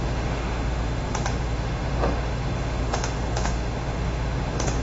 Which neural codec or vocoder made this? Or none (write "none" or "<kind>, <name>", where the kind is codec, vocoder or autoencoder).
autoencoder, DAC-VAE